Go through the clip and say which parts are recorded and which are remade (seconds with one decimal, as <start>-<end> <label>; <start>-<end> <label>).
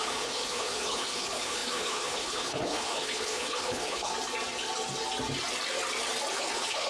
0.0-4.1 remade; 4.1-6.3 recorded; 6.3-6.9 remade